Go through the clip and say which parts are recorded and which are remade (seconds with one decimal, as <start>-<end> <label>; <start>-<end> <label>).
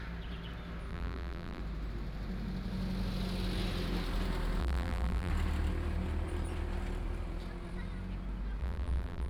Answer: 0.0-0.9 recorded; 0.9-1.6 remade; 1.6-4.6 recorded; 4.6-5.3 remade; 5.3-8.6 recorded; 8.6-9.3 remade